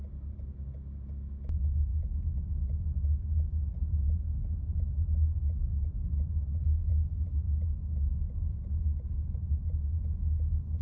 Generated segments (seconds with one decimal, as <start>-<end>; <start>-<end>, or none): 1.9-2.5; 6.9-8.3